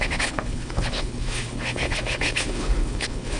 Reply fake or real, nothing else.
fake